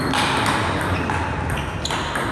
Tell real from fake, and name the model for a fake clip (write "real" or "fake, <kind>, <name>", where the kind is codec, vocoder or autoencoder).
real